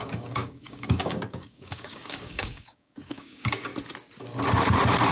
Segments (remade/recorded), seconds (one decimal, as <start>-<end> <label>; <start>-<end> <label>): 0.0-3.7 remade; 3.7-5.1 recorded